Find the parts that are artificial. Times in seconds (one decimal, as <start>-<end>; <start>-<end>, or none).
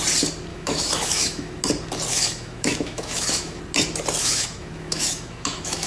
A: 0.5-1.6; 2.1-3.6; 4.2-5.9